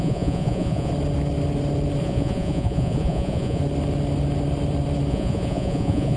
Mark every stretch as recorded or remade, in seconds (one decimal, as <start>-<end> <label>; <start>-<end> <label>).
0.0-0.9 remade; 0.9-2.0 recorded; 2.0-3.6 remade; 3.6-5.1 recorded; 5.1-6.2 remade